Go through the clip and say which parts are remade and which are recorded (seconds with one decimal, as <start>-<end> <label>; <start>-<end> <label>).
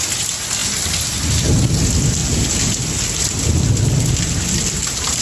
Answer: 0.0-5.2 recorded